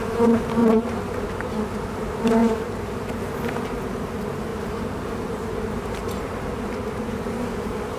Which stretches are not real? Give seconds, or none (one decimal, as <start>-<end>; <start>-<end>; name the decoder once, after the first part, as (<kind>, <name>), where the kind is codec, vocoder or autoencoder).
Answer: 0.6-1.3 (vocoder, BigVGAN v2); 2.4-3.2; 4.5-6.6